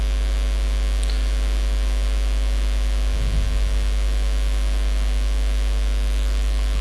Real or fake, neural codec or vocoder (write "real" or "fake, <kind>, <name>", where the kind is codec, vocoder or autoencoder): real